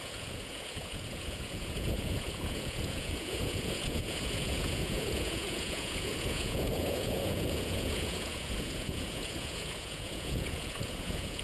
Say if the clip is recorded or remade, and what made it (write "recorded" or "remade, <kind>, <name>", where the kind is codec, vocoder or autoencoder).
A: remade, vocoder, Vocos